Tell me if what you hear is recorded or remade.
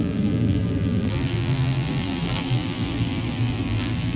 remade